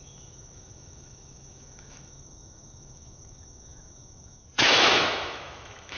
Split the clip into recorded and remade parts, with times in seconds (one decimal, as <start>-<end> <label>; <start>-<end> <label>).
0.0-6.0 remade